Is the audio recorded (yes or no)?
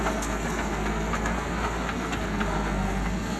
no